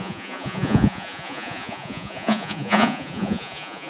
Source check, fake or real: fake